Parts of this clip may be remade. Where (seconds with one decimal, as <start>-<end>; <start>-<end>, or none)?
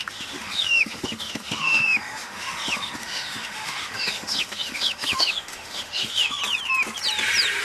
0.0-6.4